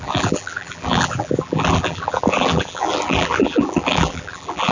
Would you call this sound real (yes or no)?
no